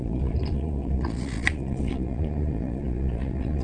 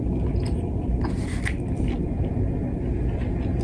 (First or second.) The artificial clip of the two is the first